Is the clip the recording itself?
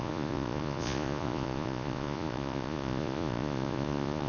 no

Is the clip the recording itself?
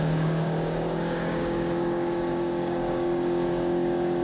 no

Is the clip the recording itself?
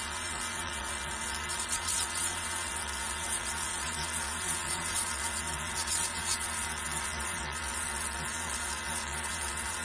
no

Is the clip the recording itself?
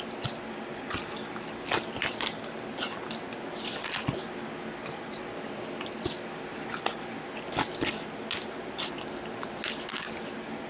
yes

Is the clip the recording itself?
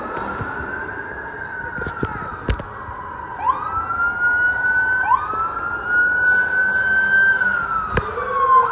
yes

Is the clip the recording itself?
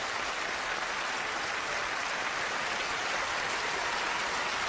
yes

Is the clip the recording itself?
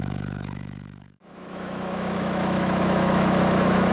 no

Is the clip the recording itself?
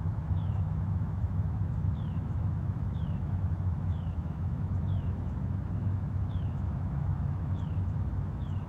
no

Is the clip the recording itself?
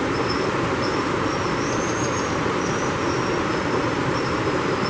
no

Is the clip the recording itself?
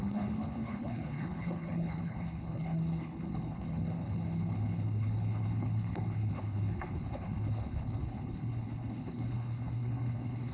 no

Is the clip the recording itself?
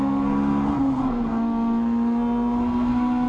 no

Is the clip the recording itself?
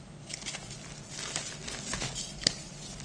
yes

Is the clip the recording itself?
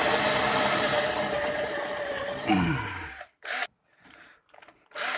yes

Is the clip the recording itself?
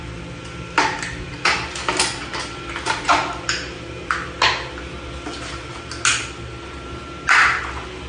yes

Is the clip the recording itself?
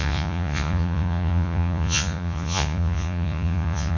no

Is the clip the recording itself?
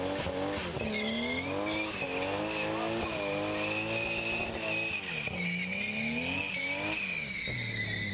yes